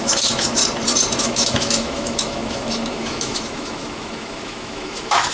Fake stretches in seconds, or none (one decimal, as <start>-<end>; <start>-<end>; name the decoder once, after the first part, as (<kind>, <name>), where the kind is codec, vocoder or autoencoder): 0.0-0.6 (autoencoder, DAC-VAE); 1.2-5.3